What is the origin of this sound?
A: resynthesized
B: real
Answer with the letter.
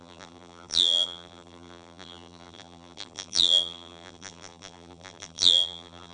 A